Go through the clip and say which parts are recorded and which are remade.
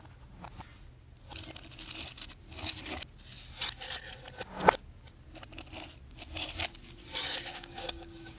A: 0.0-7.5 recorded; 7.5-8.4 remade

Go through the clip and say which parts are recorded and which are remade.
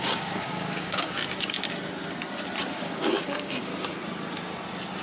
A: 0.0-1.2 remade; 1.2-2.7 recorded; 2.7-3.7 remade; 3.7-5.0 recorded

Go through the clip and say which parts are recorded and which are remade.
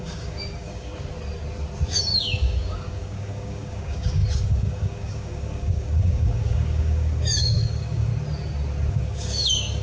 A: 0.0-0.9 remade; 0.9-2.0 recorded; 2.0-8.1 remade; 8.1-8.9 recorded; 8.9-9.8 remade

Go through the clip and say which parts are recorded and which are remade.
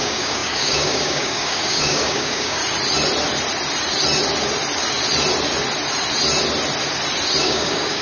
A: 0.0-2.6 remade; 2.6-7.4 recorded; 7.4-8.0 remade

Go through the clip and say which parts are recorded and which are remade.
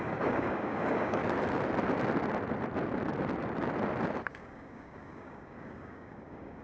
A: 0.0-1.2 remade; 1.2-4.3 recorded; 4.3-6.6 remade